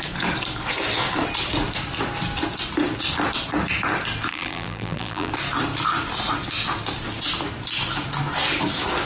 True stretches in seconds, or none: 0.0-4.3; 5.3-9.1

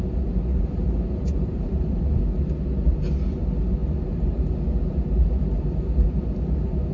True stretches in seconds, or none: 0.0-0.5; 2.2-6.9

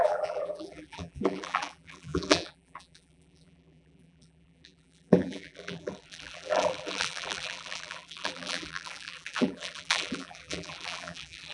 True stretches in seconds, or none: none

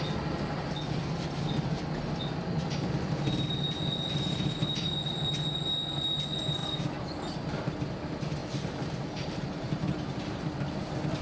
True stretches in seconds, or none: 0.0-6.6; 7.7-8.4; 10.5-11.2

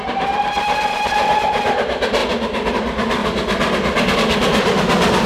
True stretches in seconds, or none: 2.2-2.7; 3.2-4.1